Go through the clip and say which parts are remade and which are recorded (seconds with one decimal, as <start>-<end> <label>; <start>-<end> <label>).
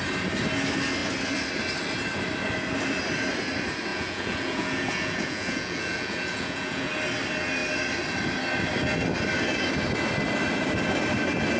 0.0-3.9 recorded; 3.9-6.9 remade; 6.9-11.6 recorded